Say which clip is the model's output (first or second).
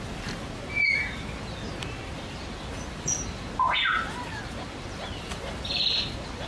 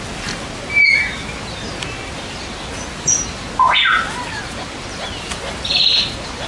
first